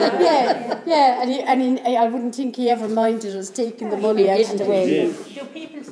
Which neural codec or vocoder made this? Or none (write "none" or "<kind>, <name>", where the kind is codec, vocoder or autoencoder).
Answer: vocoder, Vocos